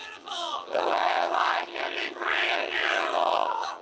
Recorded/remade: remade